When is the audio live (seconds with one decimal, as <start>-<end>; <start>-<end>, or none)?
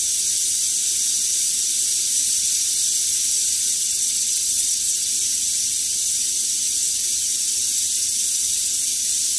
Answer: 0.0-3.8; 5.1-9.4